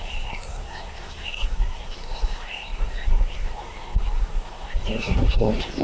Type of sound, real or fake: fake